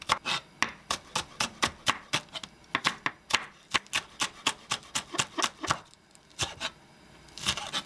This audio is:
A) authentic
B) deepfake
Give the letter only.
A